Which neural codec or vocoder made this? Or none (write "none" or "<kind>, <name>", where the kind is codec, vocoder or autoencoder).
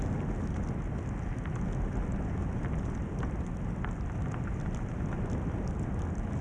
none